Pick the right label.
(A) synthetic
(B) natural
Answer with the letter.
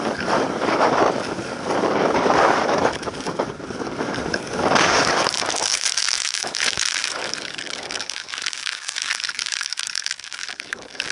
A